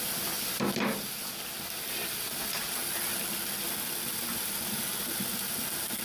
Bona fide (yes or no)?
yes